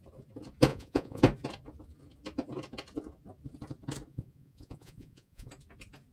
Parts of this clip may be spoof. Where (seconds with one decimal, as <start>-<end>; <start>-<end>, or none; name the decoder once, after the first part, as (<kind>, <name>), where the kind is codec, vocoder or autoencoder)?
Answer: 0.7-1.2 (vocoder, Vocos); 4.1-5.5